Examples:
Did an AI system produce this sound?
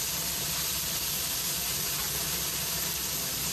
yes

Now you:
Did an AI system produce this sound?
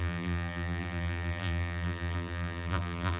yes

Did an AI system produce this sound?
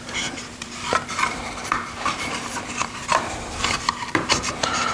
yes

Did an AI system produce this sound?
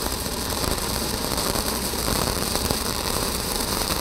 yes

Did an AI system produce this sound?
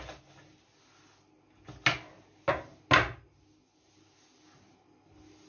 no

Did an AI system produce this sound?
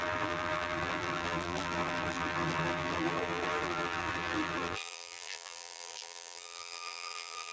yes